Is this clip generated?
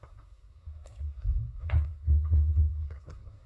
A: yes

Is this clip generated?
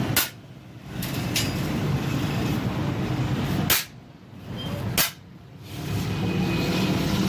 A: no